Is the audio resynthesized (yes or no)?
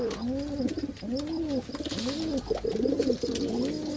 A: no